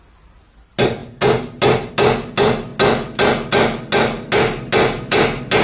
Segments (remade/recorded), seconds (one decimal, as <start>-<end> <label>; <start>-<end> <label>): 0.0-5.6 recorded